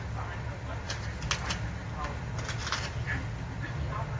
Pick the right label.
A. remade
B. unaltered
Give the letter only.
B